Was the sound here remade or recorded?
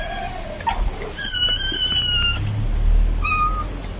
recorded